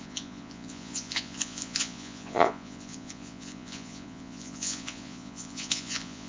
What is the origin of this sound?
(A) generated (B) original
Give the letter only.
A